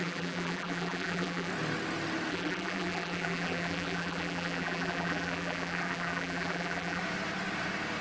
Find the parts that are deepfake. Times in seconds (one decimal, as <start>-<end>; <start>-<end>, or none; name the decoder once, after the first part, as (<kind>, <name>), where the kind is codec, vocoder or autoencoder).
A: 0.0-1.5 (vocoder, BigVGAN v2); 2.3-7.0